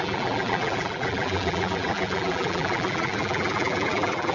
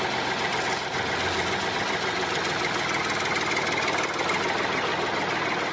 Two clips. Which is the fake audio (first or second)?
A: first